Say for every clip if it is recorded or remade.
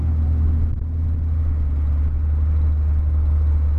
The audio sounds recorded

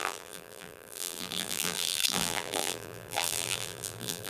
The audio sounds remade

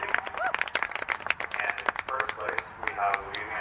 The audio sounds recorded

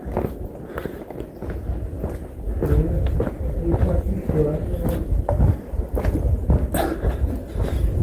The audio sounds recorded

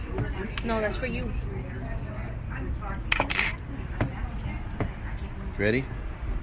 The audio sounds recorded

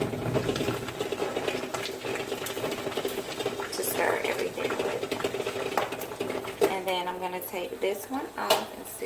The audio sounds recorded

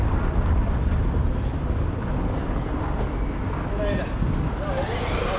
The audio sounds recorded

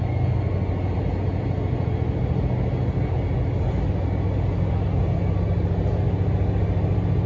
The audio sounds recorded